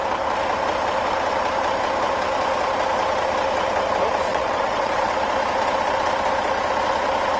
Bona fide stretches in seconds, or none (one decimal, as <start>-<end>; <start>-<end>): 0.0-4.3; 5.1-7.4